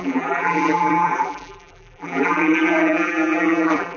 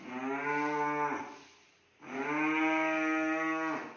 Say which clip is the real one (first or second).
second